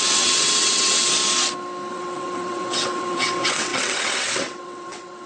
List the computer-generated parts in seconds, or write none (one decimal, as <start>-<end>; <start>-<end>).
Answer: 0.0-1.0; 1.9-5.3

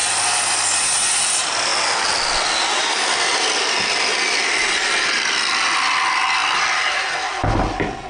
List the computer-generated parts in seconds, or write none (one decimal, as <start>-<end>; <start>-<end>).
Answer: none

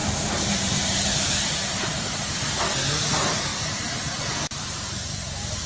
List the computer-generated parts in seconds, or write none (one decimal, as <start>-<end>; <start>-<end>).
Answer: 0.0-1.9; 3.5-4.2

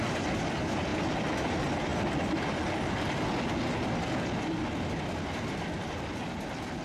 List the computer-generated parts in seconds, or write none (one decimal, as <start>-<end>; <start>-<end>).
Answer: none